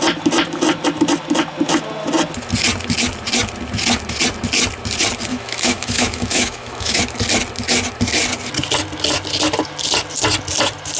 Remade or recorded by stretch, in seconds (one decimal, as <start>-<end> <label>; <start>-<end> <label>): 0.0-5.3 recorded; 5.3-7.0 remade; 7.0-11.0 recorded